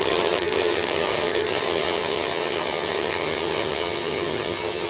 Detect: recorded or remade remade